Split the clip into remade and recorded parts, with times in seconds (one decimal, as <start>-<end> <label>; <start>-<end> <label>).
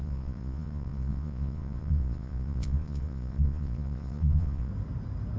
0.0-4.7 remade; 4.7-5.4 recorded